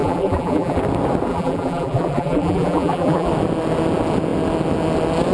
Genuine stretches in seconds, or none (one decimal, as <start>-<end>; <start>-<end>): 0.8-1.3; 3.3-5.3